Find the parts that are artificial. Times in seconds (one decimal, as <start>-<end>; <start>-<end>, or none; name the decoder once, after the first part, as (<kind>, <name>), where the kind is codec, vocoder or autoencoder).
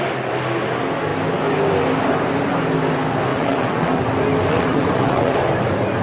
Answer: 3.3-4.0 (vocoder, WaveNeXt); 4.5-5.4